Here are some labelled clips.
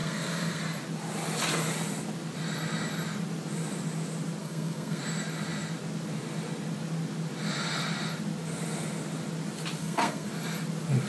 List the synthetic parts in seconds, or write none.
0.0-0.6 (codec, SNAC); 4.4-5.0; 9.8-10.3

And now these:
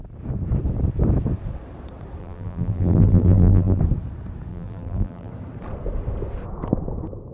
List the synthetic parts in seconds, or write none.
2.2-3.8 (vocoder, BigVGAN v2); 4.5-5.3

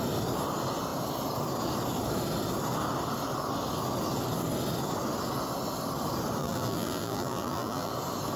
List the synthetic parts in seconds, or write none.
6.4-7.9 (vocoder, BigVGAN v2)

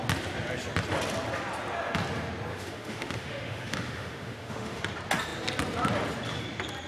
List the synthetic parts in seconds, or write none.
2.5-4.8 (autoencoder, DAC-VAE)